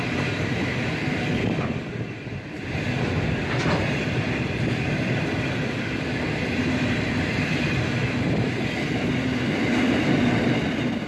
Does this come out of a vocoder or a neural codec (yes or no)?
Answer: yes